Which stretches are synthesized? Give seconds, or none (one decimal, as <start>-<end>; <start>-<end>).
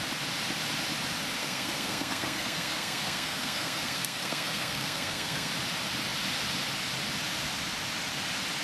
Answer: 1.4-5.5